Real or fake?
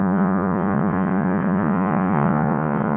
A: fake